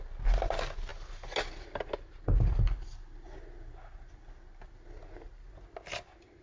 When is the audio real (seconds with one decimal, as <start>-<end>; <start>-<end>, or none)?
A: 0.0-6.4